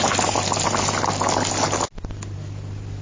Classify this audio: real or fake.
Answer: real